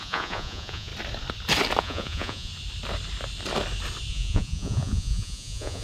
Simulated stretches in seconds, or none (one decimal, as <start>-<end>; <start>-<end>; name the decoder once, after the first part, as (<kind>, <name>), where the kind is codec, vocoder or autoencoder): 0.0-0.9 (vocoder, Vocos); 1.8-2.5; 4.1-5.8